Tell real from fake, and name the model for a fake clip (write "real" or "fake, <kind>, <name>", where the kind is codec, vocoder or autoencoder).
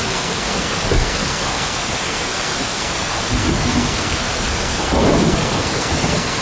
fake, codec, SNAC